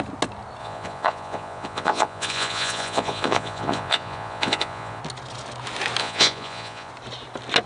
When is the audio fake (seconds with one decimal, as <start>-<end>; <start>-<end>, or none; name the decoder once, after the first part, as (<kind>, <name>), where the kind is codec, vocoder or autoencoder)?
0.6-5.0 (vocoder, Vocos); 6.0-6.9